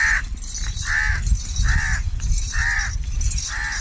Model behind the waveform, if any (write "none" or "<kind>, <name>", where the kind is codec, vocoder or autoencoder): none